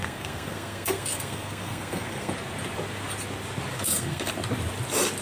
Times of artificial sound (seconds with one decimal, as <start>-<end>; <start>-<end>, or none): 0.0-2.3; 3.7-4.3